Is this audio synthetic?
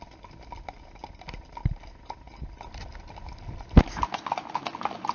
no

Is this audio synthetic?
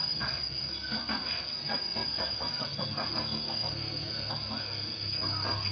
yes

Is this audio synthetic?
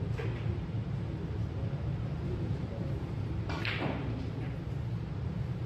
yes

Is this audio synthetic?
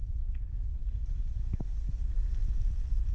no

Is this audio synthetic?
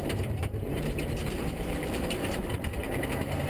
yes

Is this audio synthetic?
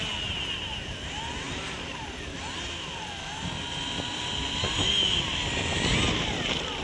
no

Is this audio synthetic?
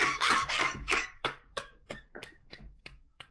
yes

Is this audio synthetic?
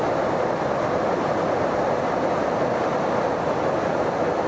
no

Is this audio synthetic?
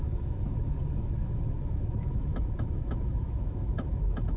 yes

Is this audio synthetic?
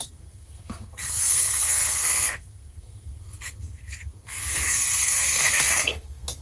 yes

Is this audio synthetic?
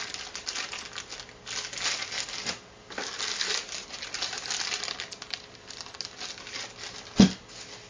no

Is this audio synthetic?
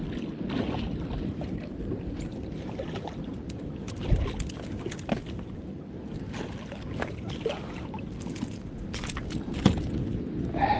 no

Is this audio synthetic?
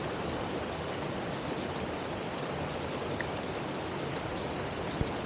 no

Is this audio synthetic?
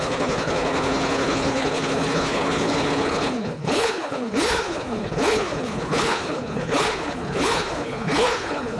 yes